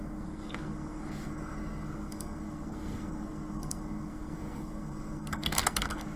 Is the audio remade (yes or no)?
yes